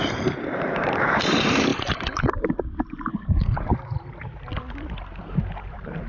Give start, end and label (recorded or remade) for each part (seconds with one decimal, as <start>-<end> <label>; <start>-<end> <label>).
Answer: 0.0-1.7 remade; 1.7-2.3 recorded; 2.3-3.1 remade; 3.1-5.0 recorded; 5.0-6.1 remade